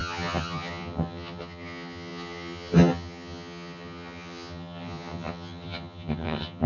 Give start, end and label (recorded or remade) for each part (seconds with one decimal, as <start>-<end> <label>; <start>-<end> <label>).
0.0-6.7 remade